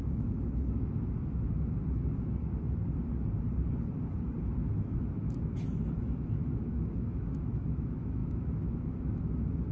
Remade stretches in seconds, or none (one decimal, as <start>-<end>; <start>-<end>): 0.0-2.8; 4.4-9.7